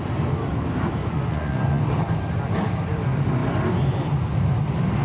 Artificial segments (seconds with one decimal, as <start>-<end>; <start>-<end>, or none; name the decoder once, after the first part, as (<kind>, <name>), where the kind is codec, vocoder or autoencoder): 1.0-1.8 (vocoder, Vocos)

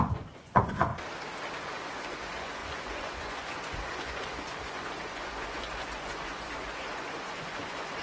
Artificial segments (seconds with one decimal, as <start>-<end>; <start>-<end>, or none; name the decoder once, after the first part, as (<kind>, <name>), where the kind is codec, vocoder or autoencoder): 0.0-0.9 (vocoder, Vocos); 1.6-8.0

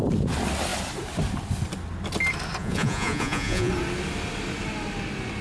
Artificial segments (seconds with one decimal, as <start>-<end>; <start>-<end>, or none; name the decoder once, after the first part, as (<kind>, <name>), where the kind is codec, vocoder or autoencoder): 2.6-3.7 (vocoder, Vocos)